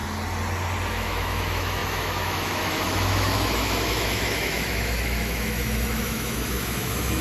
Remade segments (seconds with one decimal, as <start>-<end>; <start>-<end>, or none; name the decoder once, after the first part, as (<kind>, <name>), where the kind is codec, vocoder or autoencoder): 0.9-7.2 (autoencoder, DAC-VAE)